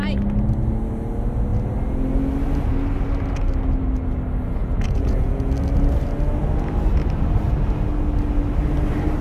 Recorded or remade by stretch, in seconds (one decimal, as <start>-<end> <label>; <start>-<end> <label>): 0.0-4.6 recorded; 4.6-5.5 remade; 5.5-9.2 recorded